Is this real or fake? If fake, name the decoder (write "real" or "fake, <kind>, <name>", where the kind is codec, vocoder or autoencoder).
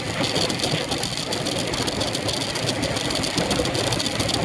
real